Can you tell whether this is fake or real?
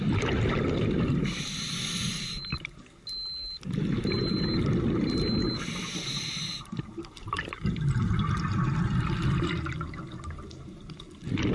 real